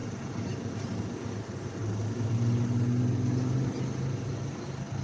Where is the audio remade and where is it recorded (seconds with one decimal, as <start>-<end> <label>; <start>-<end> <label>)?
0.0-5.0 recorded